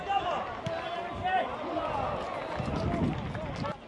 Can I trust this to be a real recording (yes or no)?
yes